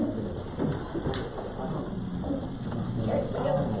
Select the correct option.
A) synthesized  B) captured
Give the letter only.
B